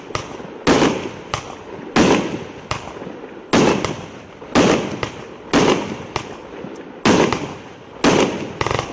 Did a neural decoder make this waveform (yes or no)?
no